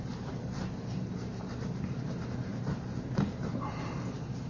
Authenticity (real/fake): fake